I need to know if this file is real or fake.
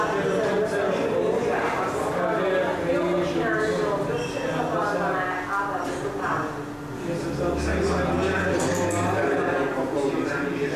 real